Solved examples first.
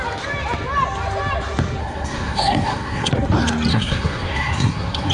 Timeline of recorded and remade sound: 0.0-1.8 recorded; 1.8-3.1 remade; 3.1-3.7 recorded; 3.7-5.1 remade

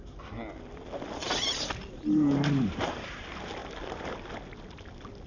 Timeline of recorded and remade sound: 0.0-5.3 recorded

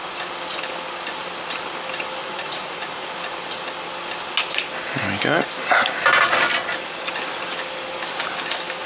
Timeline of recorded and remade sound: 0.0-2.2 recorded; 2.2-3.1 remade; 3.1-8.9 recorded